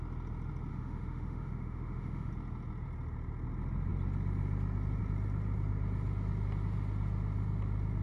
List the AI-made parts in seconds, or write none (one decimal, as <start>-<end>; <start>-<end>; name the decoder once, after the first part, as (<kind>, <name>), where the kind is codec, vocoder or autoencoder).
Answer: 0.7-2.3 (autoencoder, DAC-VAE)